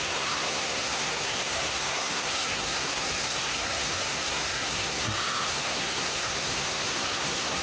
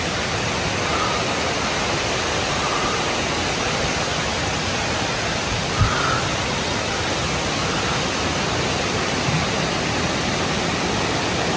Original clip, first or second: second